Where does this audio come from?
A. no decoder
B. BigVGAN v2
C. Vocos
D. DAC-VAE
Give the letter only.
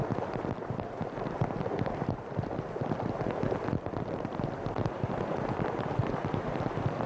A